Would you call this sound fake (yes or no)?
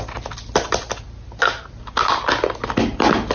no